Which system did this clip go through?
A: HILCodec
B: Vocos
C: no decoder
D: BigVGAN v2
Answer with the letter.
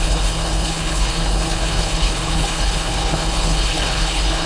A